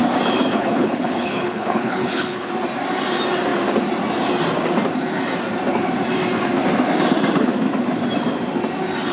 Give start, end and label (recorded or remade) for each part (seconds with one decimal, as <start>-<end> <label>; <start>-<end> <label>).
0.0-0.5 recorded; 0.5-2.5 remade; 2.5-9.1 recorded